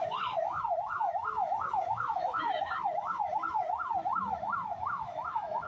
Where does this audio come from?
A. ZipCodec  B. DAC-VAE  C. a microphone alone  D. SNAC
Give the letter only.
B